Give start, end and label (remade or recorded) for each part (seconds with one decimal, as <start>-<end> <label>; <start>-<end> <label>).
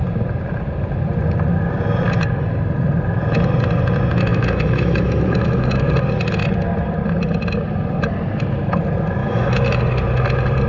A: 0.0-4.3 recorded; 4.3-5.9 remade; 5.9-9.2 recorded; 9.2-9.8 remade; 9.8-10.7 recorded